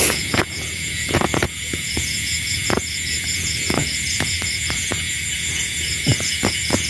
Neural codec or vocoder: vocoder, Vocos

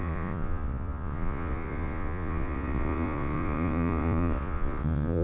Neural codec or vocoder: vocoder, Vocos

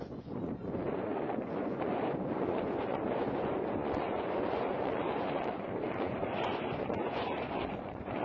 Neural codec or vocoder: vocoder, Vocos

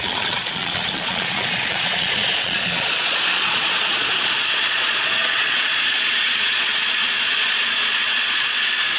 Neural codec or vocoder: vocoder, Vocos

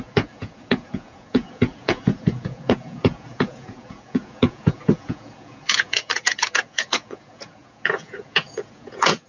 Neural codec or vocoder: vocoder, Vocos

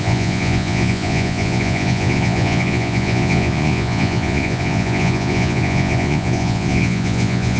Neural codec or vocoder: vocoder, Vocos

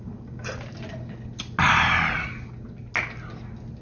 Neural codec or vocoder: none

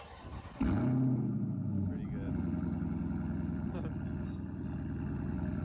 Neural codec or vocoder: none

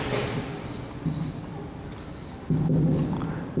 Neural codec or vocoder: none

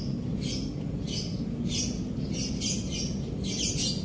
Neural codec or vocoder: none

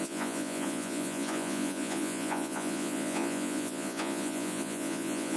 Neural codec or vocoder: vocoder, Vocos